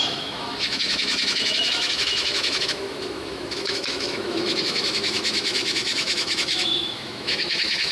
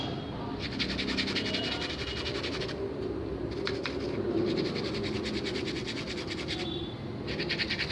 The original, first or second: second